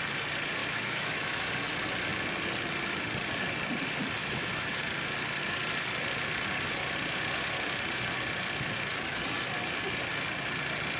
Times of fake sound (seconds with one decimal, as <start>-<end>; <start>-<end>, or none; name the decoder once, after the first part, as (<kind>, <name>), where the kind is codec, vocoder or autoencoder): 0.6-1.4 (autoencoder, DAC-VAE); 4.2-4.8